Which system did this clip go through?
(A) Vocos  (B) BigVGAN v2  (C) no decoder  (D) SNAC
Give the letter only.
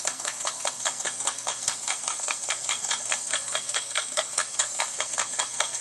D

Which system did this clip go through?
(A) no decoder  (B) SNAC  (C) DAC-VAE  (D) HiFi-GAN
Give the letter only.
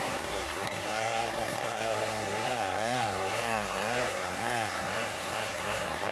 B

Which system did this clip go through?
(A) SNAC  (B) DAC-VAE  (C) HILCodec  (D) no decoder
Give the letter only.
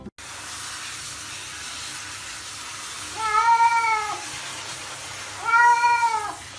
D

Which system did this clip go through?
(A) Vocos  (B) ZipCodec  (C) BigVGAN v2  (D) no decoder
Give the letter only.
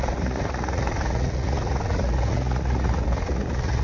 A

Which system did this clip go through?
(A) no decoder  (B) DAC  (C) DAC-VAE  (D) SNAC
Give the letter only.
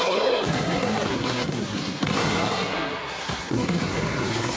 D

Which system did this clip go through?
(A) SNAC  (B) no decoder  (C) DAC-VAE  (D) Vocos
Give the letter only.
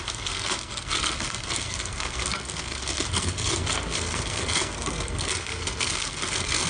A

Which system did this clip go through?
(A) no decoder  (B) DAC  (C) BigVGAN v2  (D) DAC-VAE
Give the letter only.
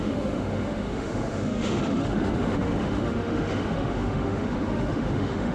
D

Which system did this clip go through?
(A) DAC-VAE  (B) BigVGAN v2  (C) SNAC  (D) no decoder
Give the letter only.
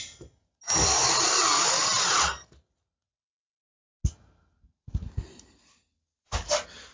D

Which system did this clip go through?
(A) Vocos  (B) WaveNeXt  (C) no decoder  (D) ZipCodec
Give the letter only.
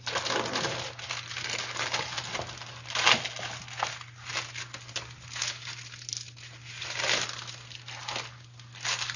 C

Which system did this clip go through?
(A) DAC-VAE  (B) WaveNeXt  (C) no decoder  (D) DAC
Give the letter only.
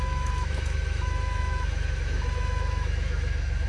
A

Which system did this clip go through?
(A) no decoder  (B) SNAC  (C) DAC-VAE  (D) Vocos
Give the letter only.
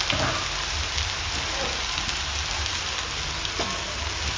A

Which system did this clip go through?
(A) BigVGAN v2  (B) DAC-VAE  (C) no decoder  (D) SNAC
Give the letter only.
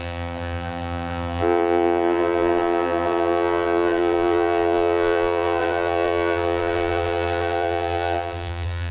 A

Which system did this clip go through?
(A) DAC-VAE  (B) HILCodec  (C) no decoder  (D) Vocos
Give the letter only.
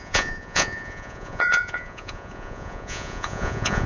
D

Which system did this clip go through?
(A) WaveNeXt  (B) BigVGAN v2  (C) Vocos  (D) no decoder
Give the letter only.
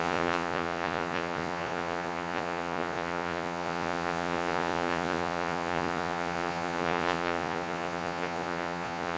C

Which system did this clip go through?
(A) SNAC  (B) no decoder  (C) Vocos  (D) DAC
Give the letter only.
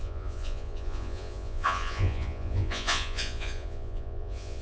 C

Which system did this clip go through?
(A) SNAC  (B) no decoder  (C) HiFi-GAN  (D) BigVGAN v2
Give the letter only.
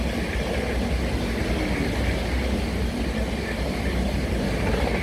B